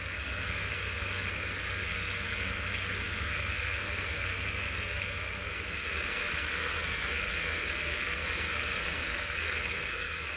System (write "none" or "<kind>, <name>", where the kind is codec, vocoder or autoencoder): codec, SNAC